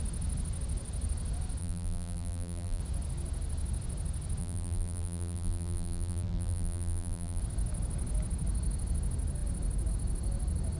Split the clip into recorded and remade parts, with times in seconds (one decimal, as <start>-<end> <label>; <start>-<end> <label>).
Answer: 0.0-1.6 recorded; 1.6-2.8 remade; 2.8-4.4 recorded; 4.4-7.4 remade; 7.4-10.8 recorded